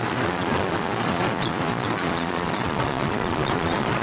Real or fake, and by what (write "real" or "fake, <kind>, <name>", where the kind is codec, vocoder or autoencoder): fake, vocoder, Vocos